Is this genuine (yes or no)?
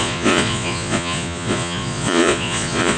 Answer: no